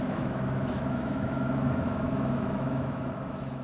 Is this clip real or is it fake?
fake